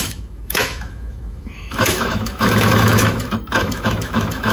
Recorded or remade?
remade